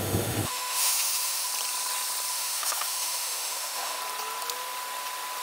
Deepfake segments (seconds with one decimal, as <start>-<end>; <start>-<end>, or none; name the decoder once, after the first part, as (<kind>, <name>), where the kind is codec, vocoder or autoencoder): 0.0-1.5 (autoencoder, DAC-VAE); 2.3-4.0